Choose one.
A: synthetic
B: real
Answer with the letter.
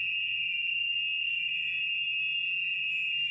B